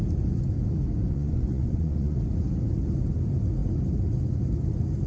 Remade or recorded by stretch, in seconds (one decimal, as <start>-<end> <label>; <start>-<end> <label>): 0.0-1.1 recorded; 1.1-2.2 remade; 2.2-5.1 recorded